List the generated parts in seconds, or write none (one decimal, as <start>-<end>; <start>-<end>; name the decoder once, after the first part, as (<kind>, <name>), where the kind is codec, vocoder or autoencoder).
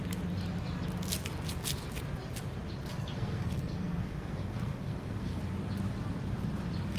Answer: 2.9-5.4 (codec, SNAC)